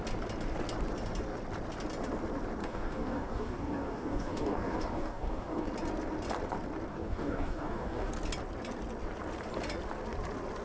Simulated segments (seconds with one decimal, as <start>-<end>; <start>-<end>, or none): 2.6-5.7; 6.9-8.1